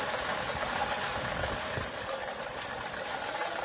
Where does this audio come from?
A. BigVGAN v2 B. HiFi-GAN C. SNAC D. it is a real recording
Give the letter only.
D